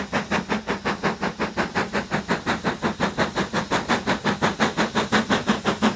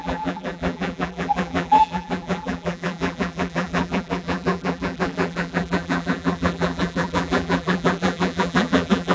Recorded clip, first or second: first